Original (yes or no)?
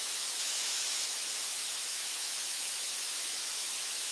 no